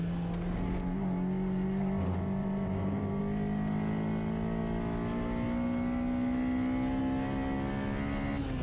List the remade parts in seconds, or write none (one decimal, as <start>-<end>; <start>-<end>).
2.4-3.2